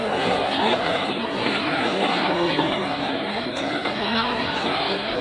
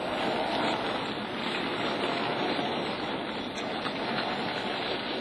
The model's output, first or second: first